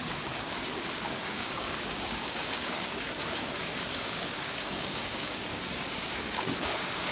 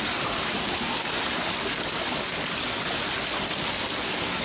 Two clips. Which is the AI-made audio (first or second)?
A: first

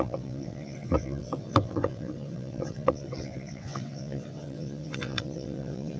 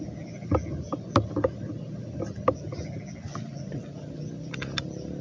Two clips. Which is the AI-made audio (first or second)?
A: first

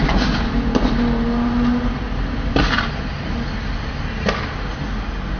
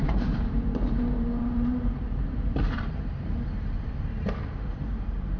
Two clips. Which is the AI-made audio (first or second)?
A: second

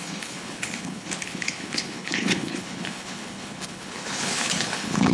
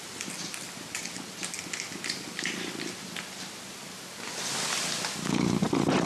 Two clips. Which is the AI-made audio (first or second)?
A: first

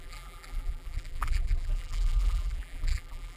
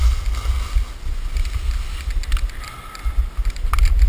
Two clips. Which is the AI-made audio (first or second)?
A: first